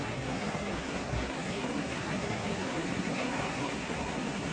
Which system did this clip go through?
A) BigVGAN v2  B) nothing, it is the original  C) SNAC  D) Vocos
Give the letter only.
C